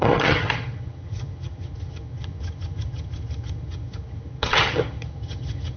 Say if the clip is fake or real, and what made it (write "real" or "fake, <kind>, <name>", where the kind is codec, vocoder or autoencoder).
fake, vocoder, HiFi-GAN